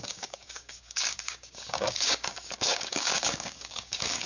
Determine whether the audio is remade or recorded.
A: remade